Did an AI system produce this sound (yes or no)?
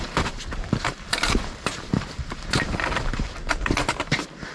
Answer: yes